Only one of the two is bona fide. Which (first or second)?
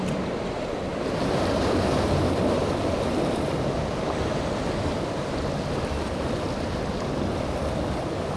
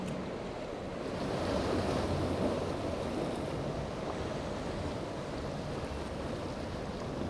second